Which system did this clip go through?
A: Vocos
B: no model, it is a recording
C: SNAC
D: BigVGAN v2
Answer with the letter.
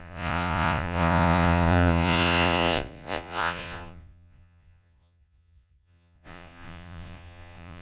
A